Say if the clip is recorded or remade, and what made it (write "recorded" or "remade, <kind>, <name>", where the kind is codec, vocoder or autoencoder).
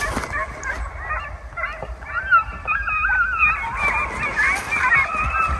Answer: recorded